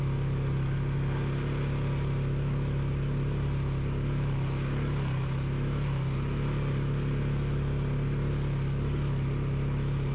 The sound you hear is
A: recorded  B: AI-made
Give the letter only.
A